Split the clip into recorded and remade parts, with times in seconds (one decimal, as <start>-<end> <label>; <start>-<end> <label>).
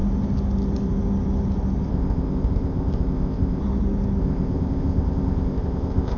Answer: 0.0-1.9 recorded; 1.9-3.6 remade; 3.6-4.2 recorded; 4.2-6.2 remade